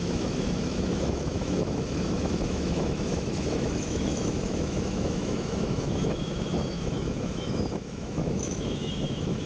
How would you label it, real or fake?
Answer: fake